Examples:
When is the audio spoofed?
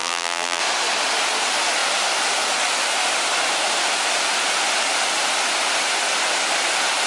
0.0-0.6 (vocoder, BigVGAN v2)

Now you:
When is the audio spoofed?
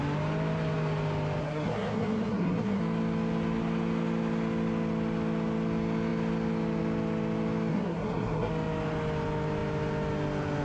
1.4-2.8 (codec, SNAC); 7.7-8.5